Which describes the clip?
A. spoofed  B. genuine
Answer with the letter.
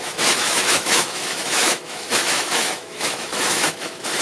A